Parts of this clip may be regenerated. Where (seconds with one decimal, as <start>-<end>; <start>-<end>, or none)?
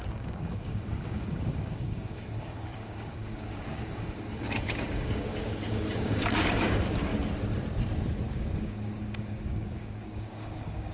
0.0-7.1; 8.3-10.9